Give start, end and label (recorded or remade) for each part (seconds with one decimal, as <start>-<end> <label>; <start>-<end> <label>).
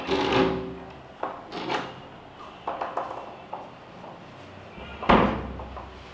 0.0-6.1 recorded